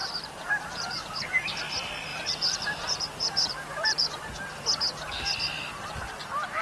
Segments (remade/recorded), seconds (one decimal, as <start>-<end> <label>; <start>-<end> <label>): 0.0-1.6 remade; 1.6-2.1 recorded; 2.1-4.2 remade; 4.2-6.6 recorded